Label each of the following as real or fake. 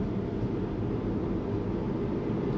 real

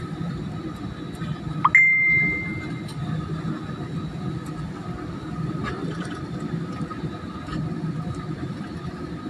real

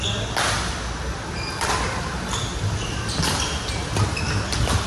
real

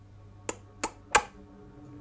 real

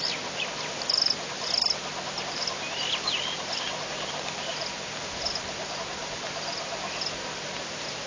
real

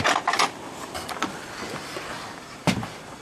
real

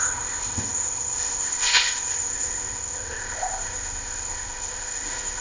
fake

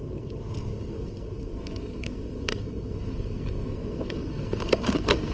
fake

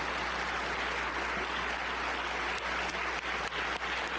real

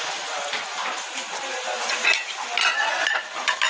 real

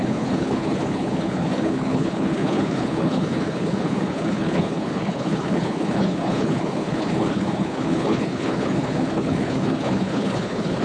fake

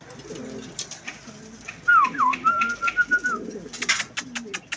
real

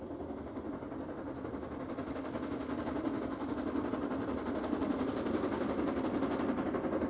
real